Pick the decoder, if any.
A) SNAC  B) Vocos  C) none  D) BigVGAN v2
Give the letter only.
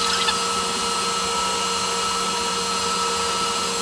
C